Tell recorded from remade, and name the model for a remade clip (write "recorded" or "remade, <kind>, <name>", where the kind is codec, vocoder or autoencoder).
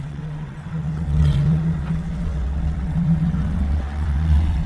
remade, vocoder, WaveNeXt